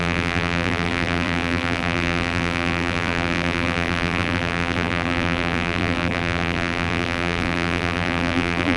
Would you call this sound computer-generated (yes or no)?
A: yes